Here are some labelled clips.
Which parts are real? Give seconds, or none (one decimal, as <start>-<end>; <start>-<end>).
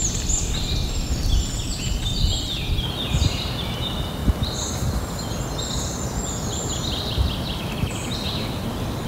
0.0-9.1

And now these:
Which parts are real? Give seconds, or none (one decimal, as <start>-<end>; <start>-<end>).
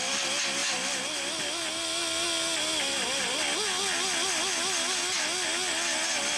0.0-6.4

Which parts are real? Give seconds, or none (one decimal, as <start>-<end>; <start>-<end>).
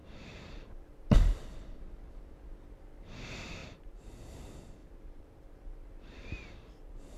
1.8-3.6; 4.3-4.8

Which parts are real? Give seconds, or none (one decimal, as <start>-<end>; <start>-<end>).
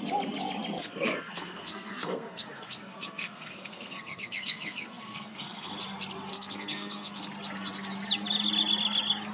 0.0-0.8; 5.7-6.3; 7.2-9.3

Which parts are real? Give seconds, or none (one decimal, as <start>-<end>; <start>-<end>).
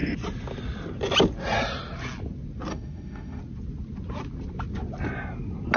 0.0-2.7; 3.4-5.8